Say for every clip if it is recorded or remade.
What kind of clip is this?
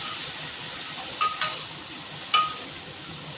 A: recorded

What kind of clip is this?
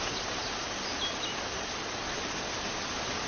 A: recorded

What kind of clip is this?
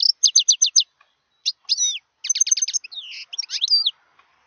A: recorded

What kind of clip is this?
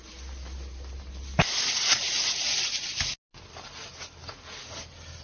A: recorded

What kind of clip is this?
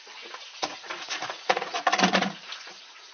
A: remade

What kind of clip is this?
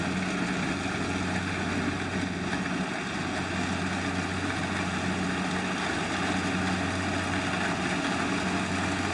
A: recorded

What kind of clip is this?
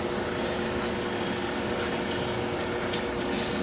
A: recorded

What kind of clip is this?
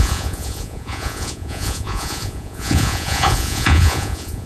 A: remade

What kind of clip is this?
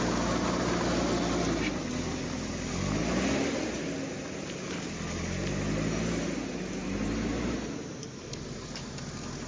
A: recorded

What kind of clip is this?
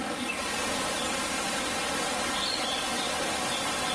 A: recorded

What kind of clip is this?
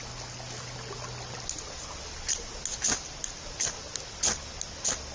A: recorded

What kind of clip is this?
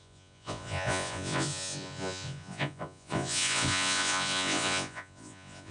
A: remade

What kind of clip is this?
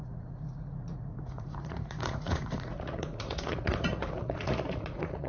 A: remade